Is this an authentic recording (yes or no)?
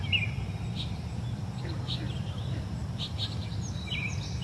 yes